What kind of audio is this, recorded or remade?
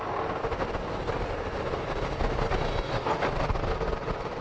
recorded